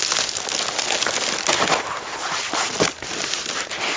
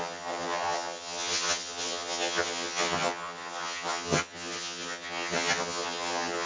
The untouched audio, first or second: first